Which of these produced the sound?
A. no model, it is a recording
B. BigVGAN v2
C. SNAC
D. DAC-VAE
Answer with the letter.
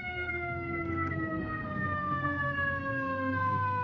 C